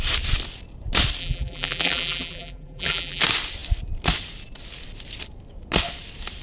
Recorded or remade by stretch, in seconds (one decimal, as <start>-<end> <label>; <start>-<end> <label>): 0.0-1.2 recorded; 1.2-3.2 remade; 3.2-6.4 recorded